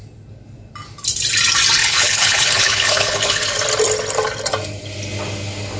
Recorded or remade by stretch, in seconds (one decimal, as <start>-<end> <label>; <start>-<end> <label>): 0.0-1.8 recorded; 1.8-3.4 remade; 3.4-5.8 recorded